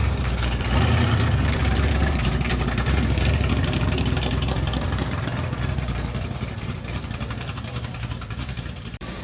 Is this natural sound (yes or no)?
no